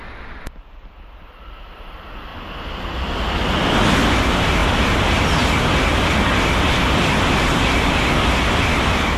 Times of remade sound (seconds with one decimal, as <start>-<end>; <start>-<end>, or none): none